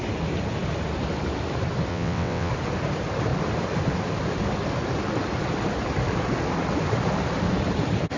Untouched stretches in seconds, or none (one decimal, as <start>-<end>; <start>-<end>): 0.0-1.9; 2.5-8.2